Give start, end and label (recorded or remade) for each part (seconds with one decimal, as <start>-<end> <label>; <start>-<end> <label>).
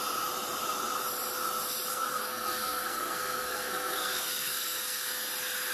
0.0-1.9 recorded; 1.9-5.3 remade; 5.3-5.7 recorded